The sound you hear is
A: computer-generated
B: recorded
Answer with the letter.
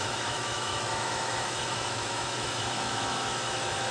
A